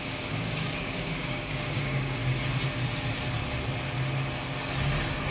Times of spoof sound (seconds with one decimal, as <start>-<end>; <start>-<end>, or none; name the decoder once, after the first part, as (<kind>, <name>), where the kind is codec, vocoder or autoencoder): 0.0-2.2 (codec, DAC)